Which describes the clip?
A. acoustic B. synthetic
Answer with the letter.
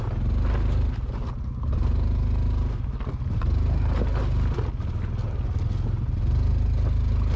A